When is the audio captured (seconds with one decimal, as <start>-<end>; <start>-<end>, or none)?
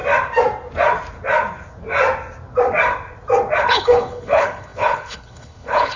0.0-3.6